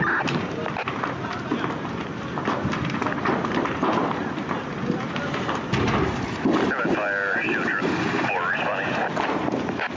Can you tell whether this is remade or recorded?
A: recorded